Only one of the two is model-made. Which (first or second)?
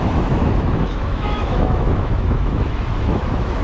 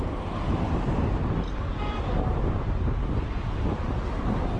first